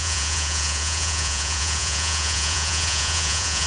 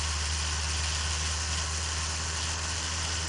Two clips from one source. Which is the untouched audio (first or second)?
second